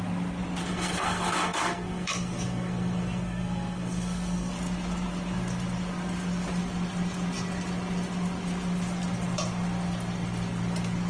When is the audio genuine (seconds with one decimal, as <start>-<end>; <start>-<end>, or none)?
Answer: 0.0-0.6; 4.5-11.1